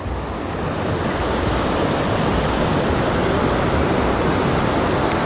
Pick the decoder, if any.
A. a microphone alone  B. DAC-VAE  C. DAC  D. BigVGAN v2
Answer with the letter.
A